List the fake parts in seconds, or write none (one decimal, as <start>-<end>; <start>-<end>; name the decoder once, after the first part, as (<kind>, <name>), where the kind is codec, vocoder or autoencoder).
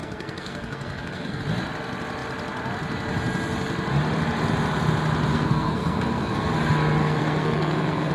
0.0-1.4 (codec, SNAC); 5.3-6.5; 7.0-8.1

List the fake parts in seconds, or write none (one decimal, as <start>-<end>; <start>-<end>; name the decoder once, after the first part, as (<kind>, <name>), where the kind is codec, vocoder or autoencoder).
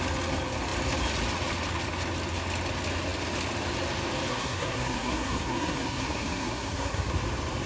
4.3-7.1 (codec, SNAC)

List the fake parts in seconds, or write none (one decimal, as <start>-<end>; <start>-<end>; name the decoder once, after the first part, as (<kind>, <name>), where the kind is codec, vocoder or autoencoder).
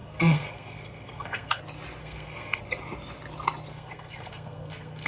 0.0-1.6 (codec, SNAC); 2.0-2.6; 3.7-5.1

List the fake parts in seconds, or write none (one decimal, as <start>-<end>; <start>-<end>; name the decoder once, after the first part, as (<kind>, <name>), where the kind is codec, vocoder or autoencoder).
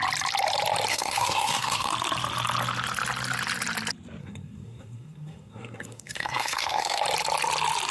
0.9-1.9 (codec, SNAC); 4.2-7.0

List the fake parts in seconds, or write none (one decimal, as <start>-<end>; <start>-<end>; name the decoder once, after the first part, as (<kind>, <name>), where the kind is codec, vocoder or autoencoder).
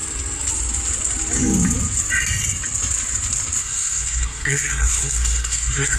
3.6-6.0 (codec, SNAC)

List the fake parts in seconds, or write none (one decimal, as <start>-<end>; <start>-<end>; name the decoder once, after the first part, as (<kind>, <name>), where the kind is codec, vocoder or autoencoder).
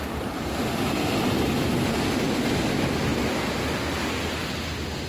none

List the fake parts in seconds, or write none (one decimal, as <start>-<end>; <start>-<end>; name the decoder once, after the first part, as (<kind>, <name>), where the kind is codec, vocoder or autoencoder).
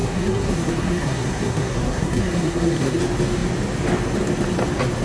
0.0-3.0 (codec, SNAC)